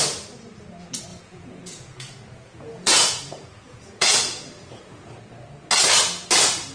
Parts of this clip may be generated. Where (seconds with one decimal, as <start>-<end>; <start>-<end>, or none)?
1.1-5.1